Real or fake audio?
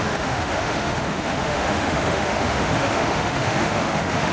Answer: fake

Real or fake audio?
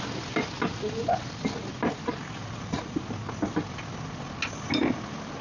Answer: real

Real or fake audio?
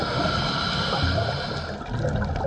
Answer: real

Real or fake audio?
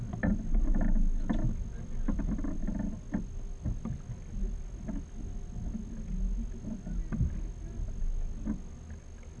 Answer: real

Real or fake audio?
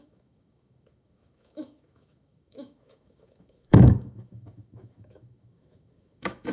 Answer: fake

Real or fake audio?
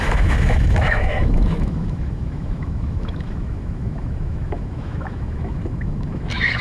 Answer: fake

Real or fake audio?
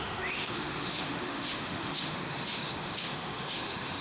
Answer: fake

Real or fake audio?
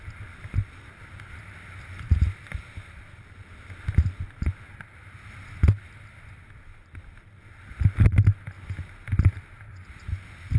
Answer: real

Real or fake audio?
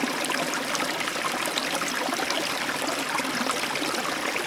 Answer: real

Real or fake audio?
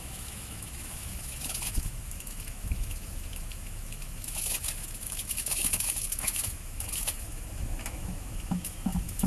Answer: fake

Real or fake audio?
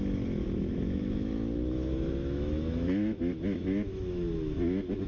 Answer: fake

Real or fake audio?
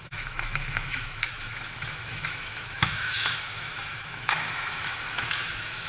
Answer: fake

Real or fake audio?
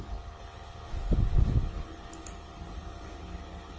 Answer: real